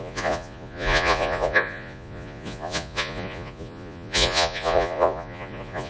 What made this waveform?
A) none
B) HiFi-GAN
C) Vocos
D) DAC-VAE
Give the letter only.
C